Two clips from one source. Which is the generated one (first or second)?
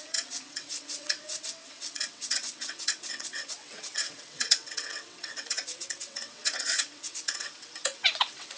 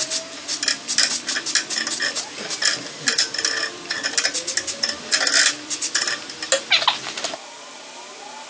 first